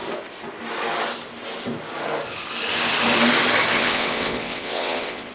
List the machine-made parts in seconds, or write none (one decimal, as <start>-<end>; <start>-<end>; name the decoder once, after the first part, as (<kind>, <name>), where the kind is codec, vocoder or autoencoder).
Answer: 3.7-5.3 (vocoder, WaveNeXt)